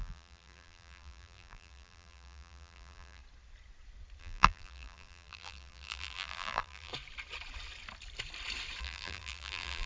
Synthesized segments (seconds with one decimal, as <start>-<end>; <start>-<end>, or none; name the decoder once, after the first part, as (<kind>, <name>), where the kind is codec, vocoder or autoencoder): 0.0-3.2 (vocoder, BigVGAN v2); 4.2-6.9; 8.8-9.9